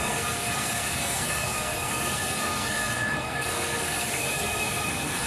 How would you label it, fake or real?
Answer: fake